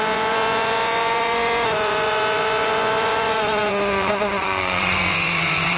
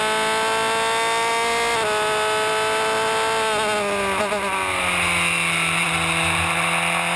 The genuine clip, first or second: second